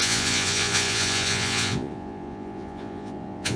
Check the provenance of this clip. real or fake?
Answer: fake